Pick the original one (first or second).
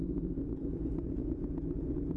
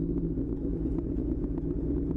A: second